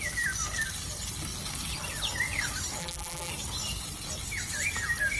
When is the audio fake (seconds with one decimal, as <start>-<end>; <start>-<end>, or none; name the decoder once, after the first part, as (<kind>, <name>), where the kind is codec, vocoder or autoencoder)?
2.8-3.3 (vocoder, BigVGAN v2)